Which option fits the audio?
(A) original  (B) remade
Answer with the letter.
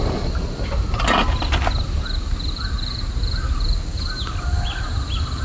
A